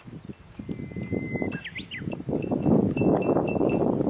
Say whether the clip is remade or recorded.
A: recorded